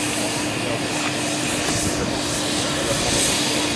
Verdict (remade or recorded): recorded